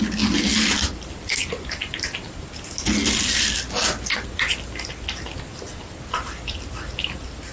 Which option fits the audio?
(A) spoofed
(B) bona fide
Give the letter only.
B